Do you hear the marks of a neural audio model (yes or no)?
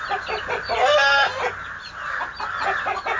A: no